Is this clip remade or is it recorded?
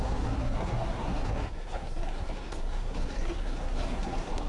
remade